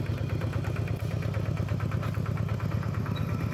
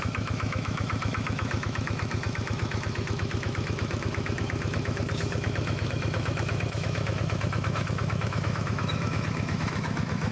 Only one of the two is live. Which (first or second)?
first